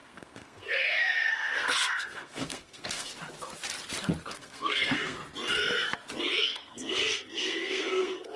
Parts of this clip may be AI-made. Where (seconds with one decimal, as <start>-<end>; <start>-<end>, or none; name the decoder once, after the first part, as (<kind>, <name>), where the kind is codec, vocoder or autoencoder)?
0.0-3.1 (codec, SNAC); 4.3-5.2; 6.2-8.4